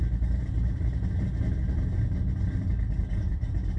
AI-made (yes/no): no